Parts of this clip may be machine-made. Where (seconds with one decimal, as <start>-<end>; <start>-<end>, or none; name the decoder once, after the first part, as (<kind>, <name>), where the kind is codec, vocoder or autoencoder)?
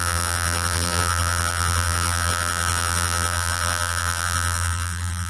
0.0-5.3 (vocoder, BigVGAN v2)